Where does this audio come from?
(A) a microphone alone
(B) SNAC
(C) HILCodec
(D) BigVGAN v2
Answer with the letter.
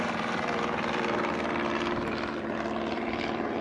D